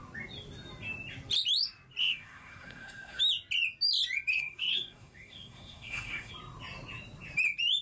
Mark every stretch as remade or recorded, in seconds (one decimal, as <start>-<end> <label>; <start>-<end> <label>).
0.0-2.0 recorded; 2.0-3.2 remade; 3.2-4.3 recorded; 4.3-6.3 remade; 6.3-7.8 recorded